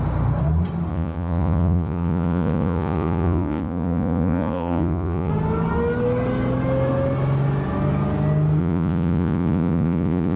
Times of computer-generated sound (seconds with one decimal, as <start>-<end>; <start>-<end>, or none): 0.9-5.3; 8.6-10.4